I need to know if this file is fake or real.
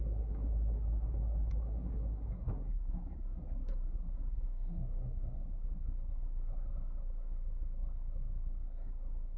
fake